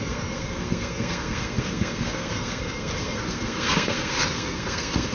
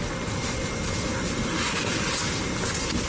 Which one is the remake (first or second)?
first